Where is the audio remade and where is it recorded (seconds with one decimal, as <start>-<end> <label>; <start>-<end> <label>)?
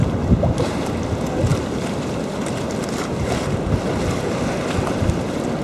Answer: 0.0-5.6 recorded